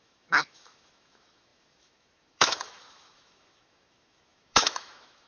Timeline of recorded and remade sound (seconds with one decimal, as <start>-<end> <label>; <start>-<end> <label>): 0.0-5.3 remade